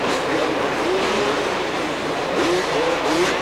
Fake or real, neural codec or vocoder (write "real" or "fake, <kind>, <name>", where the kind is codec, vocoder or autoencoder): fake, vocoder, BigVGAN v2